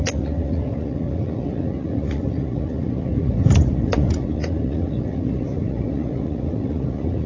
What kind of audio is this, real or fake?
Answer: fake